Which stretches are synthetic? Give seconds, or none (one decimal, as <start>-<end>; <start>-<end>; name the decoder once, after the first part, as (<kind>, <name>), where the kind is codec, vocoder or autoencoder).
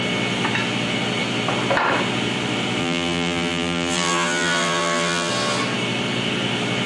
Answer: 2.8-5.3 (vocoder, BigVGAN v2)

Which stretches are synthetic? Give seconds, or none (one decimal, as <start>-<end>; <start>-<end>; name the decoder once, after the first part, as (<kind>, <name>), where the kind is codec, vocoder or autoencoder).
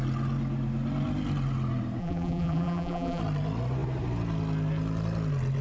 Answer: 2.0-3.2 (vocoder, BigVGAN v2)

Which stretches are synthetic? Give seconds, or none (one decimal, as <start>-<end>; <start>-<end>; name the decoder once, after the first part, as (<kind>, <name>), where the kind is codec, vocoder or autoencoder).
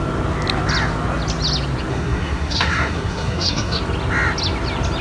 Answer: 1.9-3.8 (codec, SNAC)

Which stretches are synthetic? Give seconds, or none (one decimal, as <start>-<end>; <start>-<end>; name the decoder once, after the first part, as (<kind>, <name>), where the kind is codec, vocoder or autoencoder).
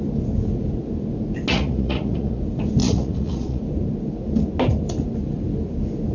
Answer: 1.5-2.4 (vocoder, Vocos); 2.8-3.6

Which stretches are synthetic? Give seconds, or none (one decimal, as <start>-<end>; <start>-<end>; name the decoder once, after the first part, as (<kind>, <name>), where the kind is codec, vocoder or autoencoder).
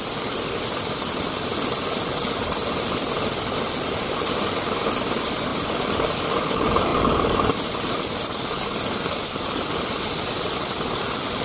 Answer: none